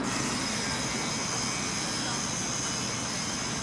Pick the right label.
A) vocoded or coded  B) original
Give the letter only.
B